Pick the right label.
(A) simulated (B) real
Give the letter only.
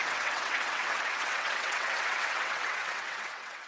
A